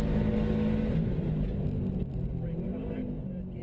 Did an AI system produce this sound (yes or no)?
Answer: no